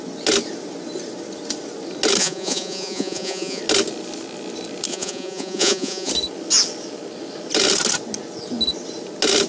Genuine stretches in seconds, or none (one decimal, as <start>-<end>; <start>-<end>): 0.0-2.2; 3.6-4.9; 6.1-9.5